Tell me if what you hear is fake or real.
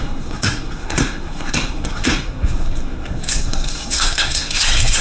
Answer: fake